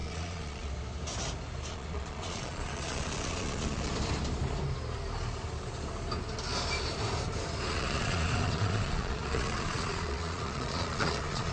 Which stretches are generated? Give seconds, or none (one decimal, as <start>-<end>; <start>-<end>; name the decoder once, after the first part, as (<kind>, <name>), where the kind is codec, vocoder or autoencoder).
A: 0.0-0.7 (vocoder, Vocos); 1.7-3.9; 7.7-11.5